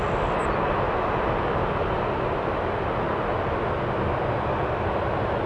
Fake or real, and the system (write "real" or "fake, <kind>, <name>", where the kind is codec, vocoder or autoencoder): real